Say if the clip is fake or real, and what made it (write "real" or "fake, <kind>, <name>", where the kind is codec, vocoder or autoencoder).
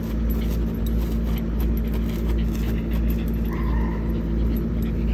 real